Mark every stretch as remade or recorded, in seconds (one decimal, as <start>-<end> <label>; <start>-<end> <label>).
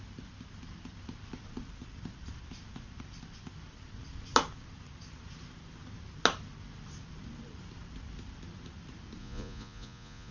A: 0.0-9.2 recorded; 9.2-10.3 remade